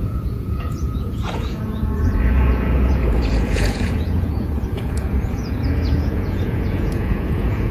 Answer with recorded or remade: remade